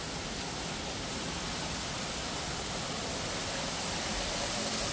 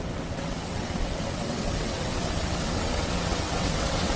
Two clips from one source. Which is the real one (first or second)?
first